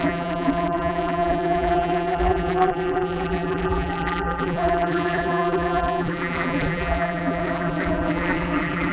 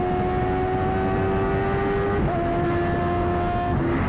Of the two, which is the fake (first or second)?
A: first